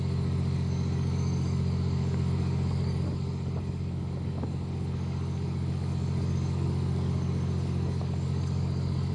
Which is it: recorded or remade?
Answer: remade